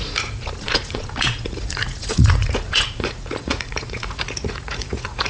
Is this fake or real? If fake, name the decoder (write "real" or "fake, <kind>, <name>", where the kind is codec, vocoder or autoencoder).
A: fake, vocoder, Vocos